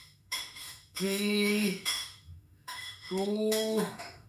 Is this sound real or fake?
fake